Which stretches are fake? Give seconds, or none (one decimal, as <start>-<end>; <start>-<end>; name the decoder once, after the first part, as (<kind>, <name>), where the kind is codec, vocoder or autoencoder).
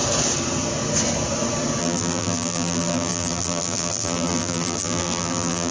1.8-5.7 (vocoder, BigVGAN v2)